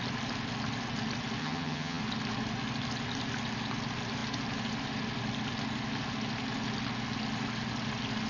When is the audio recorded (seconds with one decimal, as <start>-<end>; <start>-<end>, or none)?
0.0-1.4; 2.0-8.3